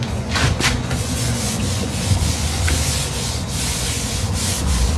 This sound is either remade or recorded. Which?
remade